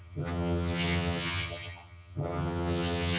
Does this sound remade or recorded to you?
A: remade